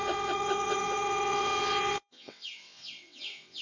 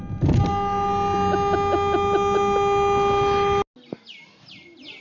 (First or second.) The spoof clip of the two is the first